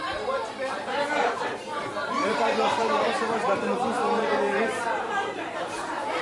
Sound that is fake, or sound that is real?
fake